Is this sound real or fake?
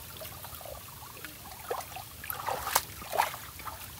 real